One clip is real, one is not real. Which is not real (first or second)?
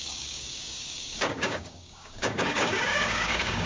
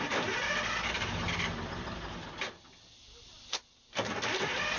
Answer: first